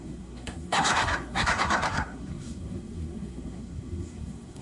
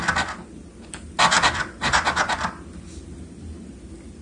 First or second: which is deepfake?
first